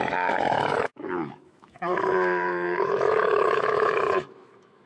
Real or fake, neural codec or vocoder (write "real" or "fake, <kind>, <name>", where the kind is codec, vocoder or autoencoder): fake, autoencoder, DAC-VAE